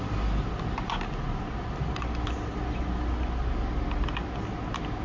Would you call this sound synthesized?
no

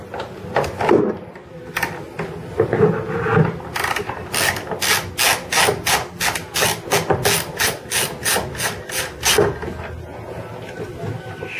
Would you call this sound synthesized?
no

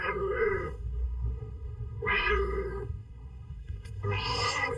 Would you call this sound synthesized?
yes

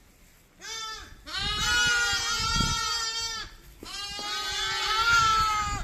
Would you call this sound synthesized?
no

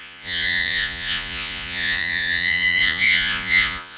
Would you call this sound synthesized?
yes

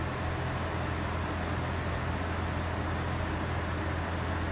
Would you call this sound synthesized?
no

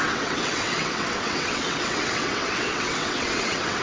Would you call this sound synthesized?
yes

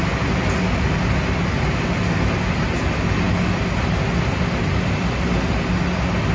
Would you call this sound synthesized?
no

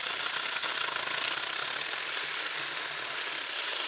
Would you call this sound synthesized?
yes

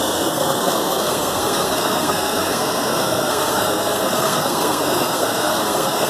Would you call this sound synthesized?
yes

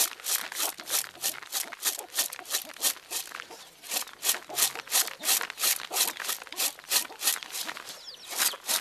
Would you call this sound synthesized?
no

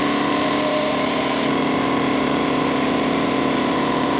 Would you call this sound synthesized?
yes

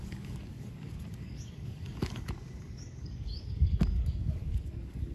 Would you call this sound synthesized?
yes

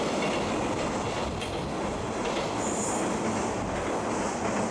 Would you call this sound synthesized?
no